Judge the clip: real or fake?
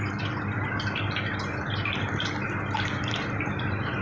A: real